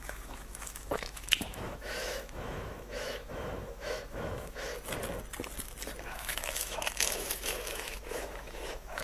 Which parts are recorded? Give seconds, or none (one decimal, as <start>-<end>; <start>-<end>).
4.7-6.1